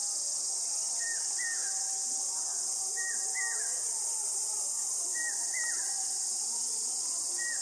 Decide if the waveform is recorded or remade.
recorded